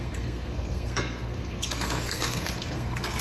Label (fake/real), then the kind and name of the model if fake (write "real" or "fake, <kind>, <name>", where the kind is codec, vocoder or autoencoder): fake, codec, SNAC